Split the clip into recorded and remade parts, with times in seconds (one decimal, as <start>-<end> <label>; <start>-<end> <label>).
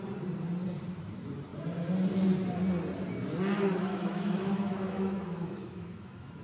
0.0-3.9 recorded; 3.9-6.4 remade